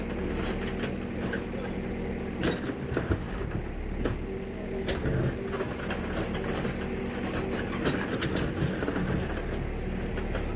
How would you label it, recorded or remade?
recorded